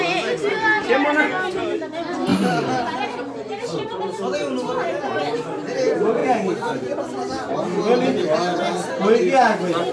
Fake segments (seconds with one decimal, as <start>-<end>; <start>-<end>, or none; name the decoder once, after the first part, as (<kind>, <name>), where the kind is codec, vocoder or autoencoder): none